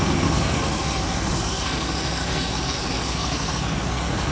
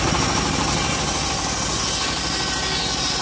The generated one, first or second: first